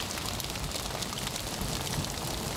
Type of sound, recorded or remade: remade